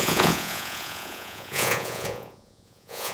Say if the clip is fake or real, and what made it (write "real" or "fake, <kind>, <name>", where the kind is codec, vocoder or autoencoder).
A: fake, vocoder, Vocos